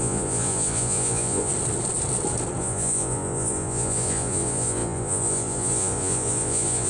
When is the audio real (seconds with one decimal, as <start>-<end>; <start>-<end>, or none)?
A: 1.5-2.6